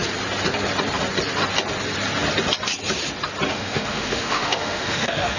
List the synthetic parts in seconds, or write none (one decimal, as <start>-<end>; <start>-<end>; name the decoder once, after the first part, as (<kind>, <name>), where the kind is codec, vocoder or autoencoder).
3.5-5.4 (autoencoder, DAC-VAE)